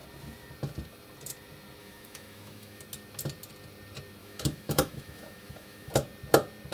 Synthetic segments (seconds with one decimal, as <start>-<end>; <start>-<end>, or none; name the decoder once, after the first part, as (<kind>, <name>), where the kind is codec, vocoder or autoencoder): 1.8-2.8 (autoencoder, DAC-VAE); 4.2-5.9